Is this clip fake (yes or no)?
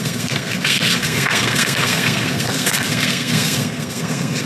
yes